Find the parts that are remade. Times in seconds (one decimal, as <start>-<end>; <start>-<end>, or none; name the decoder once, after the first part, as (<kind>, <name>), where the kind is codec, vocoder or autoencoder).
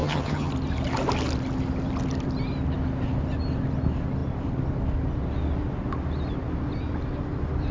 0.0-0.5 (vocoder, HiFi-GAN)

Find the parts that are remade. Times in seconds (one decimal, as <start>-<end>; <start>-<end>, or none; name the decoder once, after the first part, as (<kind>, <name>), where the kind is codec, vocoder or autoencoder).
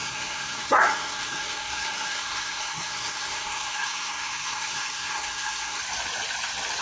0.0-5.8 (codec, SNAC)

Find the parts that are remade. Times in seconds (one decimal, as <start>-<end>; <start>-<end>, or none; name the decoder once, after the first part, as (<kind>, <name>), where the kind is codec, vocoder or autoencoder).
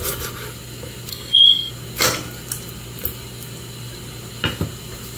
1.1-1.7 (codec, SNAC)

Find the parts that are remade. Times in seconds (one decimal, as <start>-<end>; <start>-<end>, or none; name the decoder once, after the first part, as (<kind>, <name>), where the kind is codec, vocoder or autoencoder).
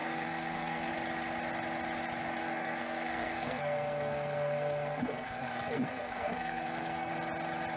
0.0-0.9 (codec, SNAC); 2.4-7.1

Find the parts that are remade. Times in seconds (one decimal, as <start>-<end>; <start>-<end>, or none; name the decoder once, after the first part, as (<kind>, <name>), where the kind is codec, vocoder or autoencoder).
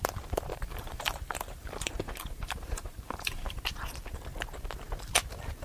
0.5-3.8 (vocoder, BigVGAN v2)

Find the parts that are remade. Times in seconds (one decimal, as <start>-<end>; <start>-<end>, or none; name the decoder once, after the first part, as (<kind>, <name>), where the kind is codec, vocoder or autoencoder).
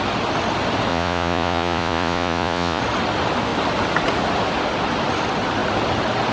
0.9-2.8 (vocoder, Vocos)